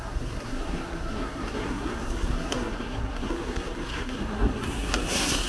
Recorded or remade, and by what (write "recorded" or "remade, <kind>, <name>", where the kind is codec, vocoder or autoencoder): remade, codec, SNAC